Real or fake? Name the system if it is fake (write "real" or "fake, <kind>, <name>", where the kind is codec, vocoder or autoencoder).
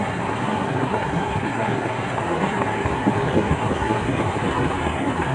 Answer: fake, codec, SNAC